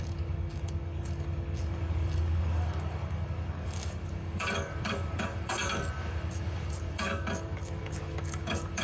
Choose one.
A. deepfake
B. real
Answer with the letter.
A